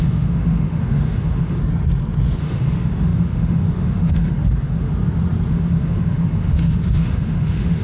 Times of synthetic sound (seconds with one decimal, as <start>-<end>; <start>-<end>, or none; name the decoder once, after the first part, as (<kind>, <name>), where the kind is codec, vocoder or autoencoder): 0.0-1.6 (autoencoder, DAC-VAE); 2.4-4.9; 5.5-7.8